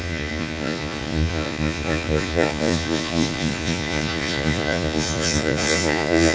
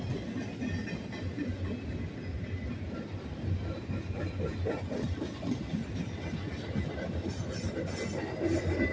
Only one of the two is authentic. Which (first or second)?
second